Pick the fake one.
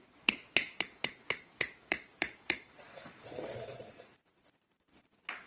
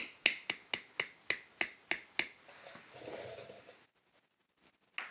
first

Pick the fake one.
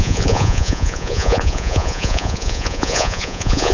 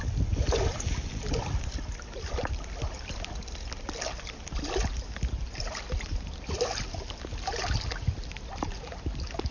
first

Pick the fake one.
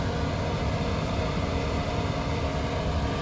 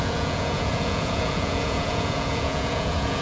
second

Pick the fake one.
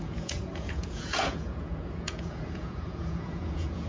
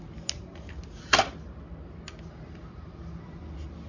first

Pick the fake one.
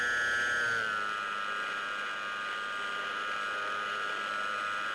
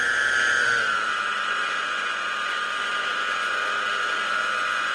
second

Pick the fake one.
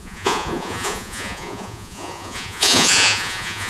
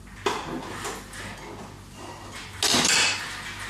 first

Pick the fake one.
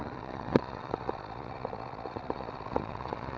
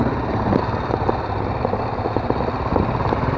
first